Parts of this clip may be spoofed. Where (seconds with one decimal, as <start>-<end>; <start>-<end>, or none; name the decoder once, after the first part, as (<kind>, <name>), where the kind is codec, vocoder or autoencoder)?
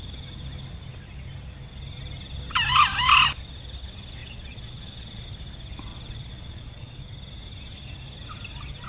4.2-5.2 (vocoder, Vocos); 5.9-7.0